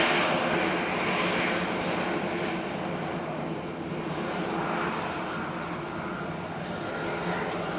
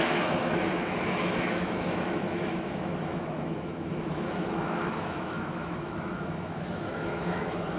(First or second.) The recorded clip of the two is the first